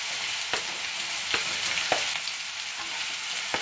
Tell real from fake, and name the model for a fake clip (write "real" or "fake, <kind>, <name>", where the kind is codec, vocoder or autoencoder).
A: real